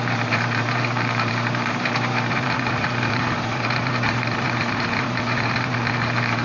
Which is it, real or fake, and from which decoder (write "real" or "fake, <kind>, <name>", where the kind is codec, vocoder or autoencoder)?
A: fake, vocoder, BigVGAN v2